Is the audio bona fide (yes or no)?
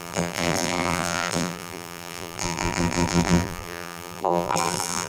no